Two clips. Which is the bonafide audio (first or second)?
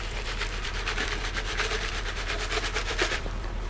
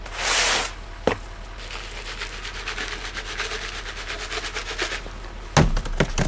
second